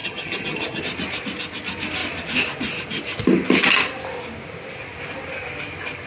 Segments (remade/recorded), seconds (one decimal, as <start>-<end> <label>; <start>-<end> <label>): 0.0-0.8 remade; 0.8-6.1 recorded

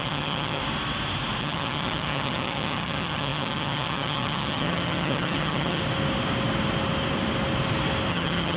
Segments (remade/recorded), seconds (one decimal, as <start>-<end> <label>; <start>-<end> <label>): 0.0-0.6 remade; 0.6-1.4 recorded; 1.4-5.8 remade; 5.8-8.1 recorded; 8.1-8.6 remade

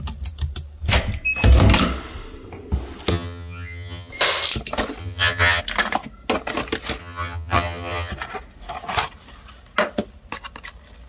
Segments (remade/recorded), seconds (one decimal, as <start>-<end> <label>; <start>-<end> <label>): 0.0-3.1 recorded; 3.1-4.1 remade; 4.1-5.0 recorded; 5.0-5.6 remade; 5.6-7.0 recorded; 7.0-8.1 remade; 8.1-11.1 recorded

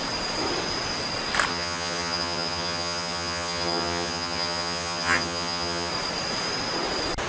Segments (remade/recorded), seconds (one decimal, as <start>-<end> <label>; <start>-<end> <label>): 0.0-1.5 recorded; 1.5-5.9 remade; 5.9-7.3 recorded